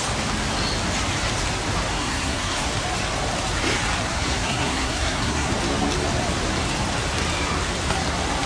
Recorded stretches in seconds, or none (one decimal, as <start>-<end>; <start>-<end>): 0.0-1.9; 2.7-4.1; 5.5-8.5